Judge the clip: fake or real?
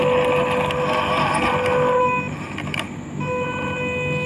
real